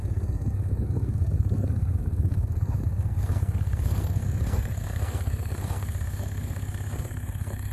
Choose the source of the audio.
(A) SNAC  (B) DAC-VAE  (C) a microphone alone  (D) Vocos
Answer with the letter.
A